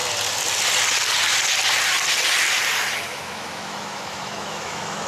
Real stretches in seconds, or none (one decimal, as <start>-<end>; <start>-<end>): 0.0-3.1